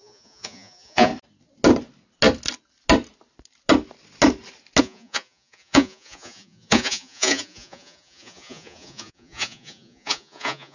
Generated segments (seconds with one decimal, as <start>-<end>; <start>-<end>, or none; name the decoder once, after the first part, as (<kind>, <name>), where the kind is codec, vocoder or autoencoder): 0.0-1.1 (vocoder, Vocos); 4.8-10.7